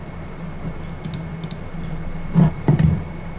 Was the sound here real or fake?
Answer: real